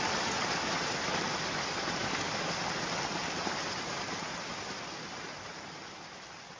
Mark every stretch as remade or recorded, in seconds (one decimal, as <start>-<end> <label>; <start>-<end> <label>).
0.0-2.0 recorded; 2.0-2.6 remade; 2.6-6.6 recorded